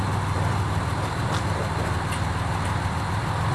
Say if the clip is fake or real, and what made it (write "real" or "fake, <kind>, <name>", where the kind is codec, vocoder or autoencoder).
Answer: real